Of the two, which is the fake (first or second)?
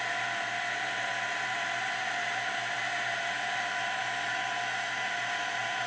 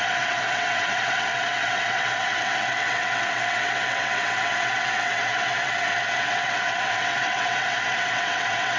second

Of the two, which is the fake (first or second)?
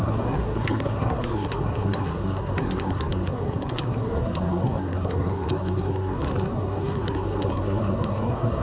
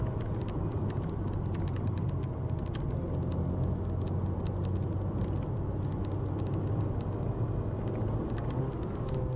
first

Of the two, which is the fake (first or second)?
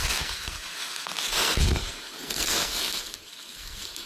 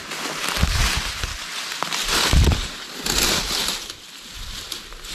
first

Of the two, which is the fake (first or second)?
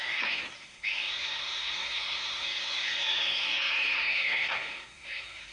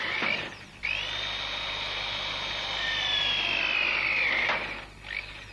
first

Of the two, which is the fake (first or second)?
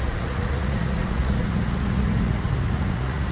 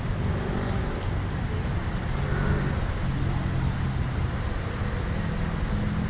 first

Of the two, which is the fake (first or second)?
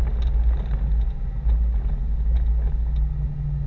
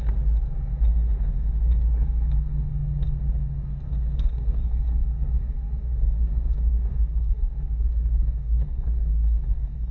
second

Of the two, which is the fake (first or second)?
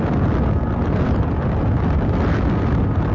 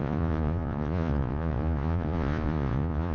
second